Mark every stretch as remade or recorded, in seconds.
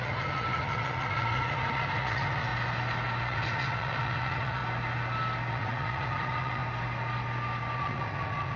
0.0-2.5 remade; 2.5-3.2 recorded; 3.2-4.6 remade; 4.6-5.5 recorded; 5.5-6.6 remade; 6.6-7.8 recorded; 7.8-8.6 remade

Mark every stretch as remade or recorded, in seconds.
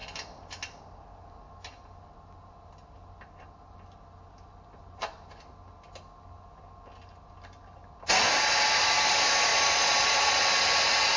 0.0-9.5 recorded; 9.5-10.4 remade; 10.4-11.2 recorded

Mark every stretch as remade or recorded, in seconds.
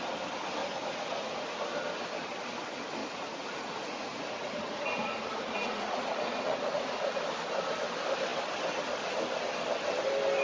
0.0-0.6 recorded; 0.6-1.6 remade; 1.6-3.0 recorded; 3.0-7.2 remade; 7.2-10.4 recorded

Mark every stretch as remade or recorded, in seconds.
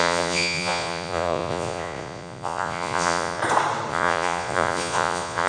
0.0-3.4 remade; 3.4-3.9 recorded; 3.9-5.5 remade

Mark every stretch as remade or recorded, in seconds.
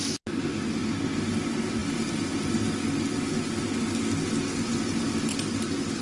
0.0-6.0 recorded